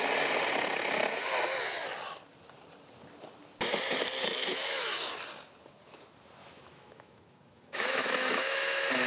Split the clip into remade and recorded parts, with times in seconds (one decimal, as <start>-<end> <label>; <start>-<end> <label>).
0.0-4.2 recorded; 4.2-5.1 remade; 5.1-6.4 recorded; 6.4-9.1 remade